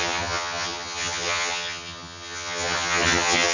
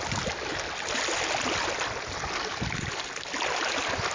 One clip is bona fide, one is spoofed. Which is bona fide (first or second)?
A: second